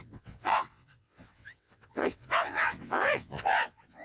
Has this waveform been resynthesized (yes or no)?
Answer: yes